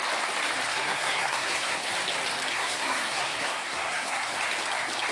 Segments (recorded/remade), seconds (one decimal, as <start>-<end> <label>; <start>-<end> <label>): 0.0-0.7 recorded; 0.7-1.9 remade; 1.9-2.5 recorded; 2.5-4.3 remade; 4.3-5.1 recorded

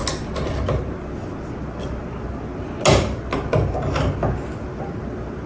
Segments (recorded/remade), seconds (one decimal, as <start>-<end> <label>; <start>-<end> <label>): 0.0-5.5 recorded

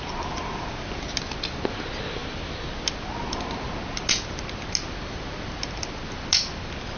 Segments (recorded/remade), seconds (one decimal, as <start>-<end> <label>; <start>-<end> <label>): 0.0-7.0 recorded